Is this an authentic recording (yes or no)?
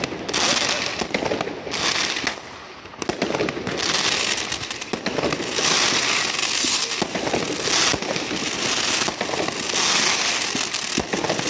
yes